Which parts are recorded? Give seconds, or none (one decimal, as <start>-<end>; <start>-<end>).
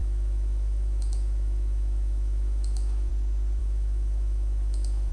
3.1-3.6